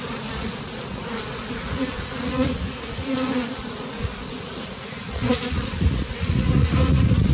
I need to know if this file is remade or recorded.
remade